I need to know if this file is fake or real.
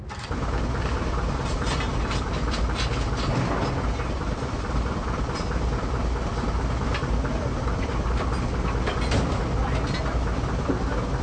real